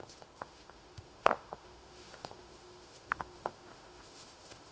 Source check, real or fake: fake